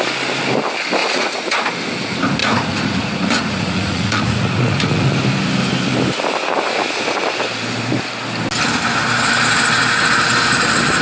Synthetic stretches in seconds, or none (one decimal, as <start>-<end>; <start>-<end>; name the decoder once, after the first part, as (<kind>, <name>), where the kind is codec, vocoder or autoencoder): 1.0-1.7 (vocoder, Vocos); 2.4-5.2

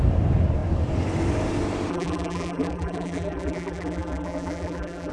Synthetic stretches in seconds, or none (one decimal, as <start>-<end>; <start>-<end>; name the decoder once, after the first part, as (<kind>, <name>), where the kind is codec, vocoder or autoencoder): 1.9-5.1 (vocoder, BigVGAN v2)

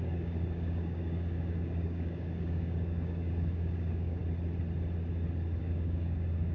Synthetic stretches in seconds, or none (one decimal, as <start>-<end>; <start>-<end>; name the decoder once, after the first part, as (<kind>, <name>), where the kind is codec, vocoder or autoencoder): 0.0-4.2 (codec, DAC); 5.6-6.5

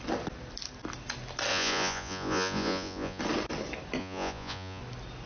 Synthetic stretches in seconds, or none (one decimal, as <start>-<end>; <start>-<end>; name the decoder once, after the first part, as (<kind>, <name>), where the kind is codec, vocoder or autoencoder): 1.5-3.2 (vocoder, Vocos); 4.0-4.8